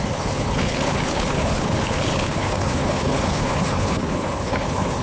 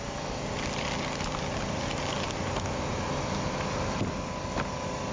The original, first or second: second